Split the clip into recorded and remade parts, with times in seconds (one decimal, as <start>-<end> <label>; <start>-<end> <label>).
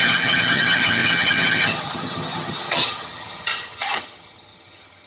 0.0-5.1 remade